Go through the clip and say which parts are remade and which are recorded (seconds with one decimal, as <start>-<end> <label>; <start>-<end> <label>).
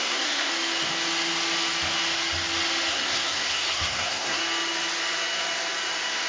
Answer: 0.0-0.5 remade; 0.5-2.9 recorded; 2.9-4.4 remade; 4.4-6.3 recorded